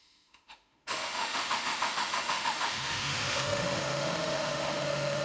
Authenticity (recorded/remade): remade